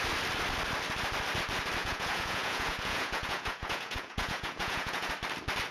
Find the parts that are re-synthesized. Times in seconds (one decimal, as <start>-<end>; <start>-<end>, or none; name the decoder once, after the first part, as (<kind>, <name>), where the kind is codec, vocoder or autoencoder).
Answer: 1.8-5.1 (vocoder, Vocos)